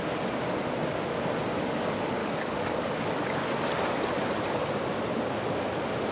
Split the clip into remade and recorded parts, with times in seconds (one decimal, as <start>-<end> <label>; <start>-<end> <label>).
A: 0.0-2.2 recorded; 2.2-3.1 remade; 3.1-6.1 recorded